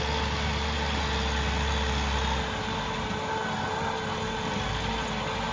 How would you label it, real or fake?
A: real